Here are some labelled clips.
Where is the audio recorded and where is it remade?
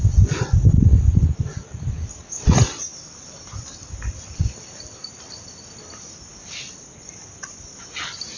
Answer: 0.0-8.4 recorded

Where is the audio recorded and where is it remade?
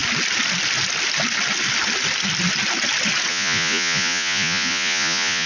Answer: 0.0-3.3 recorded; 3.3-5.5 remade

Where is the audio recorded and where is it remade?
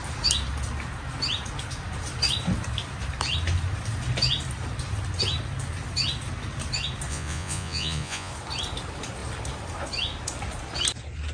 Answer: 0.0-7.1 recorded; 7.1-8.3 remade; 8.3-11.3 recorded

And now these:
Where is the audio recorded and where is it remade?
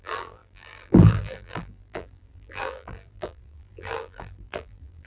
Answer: 0.0-5.1 remade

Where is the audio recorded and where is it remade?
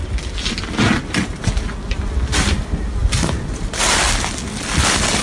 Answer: 0.0-5.2 recorded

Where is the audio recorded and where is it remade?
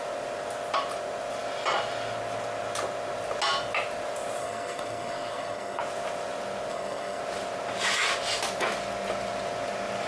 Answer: 0.0-4.4 recorded; 4.4-5.8 remade; 5.8-6.7 recorded; 6.7-7.2 remade; 7.2-10.1 recorded